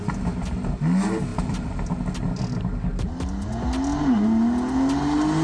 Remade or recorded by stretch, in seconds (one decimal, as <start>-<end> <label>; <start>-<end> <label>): 0.0-1.3 recorded; 1.3-2.1 remade; 2.1-5.4 recorded